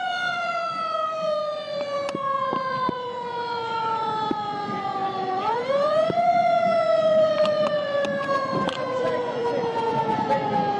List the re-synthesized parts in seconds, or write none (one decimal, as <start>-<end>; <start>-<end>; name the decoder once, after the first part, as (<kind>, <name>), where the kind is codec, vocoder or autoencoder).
0.0-10.8 (vocoder, Vocos)